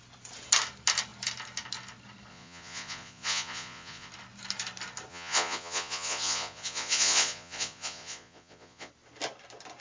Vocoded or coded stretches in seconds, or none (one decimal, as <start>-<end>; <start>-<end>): 2.3-4.1; 5.1-8.9